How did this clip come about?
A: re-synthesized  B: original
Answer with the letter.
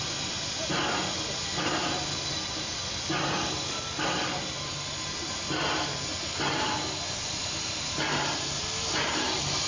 B